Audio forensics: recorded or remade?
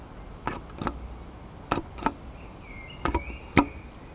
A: recorded